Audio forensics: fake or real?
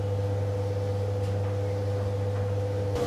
real